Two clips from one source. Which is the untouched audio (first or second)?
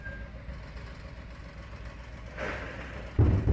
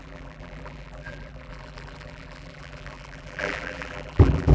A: first